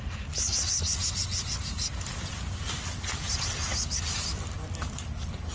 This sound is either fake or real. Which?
real